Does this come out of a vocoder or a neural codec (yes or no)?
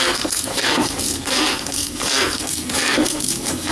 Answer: yes